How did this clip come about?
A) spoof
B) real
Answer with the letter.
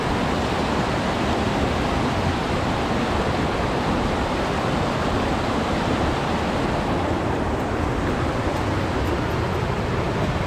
B